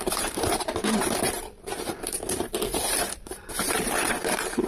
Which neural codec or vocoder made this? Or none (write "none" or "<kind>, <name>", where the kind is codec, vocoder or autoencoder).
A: vocoder, BigVGAN v2